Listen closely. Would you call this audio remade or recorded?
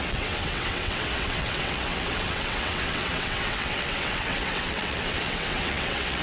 remade